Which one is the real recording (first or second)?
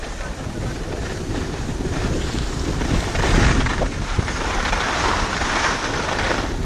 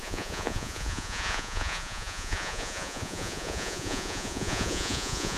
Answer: first